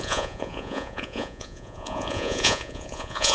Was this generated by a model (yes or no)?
yes